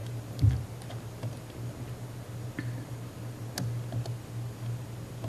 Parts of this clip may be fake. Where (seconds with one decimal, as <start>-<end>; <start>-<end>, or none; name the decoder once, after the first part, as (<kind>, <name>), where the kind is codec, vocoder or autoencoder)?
none